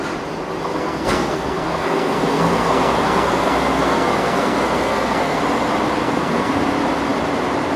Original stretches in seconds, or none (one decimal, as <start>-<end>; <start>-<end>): 0.0-0.7; 5.4-6.0; 6.5-7.8